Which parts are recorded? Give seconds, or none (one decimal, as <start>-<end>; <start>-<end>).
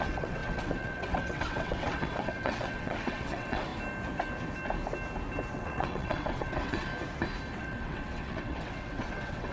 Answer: 3.7-5.5; 6.9-7.6